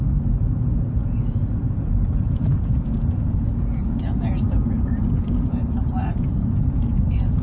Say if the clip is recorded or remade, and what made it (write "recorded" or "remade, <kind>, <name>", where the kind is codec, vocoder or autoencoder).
remade, vocoder, Vocos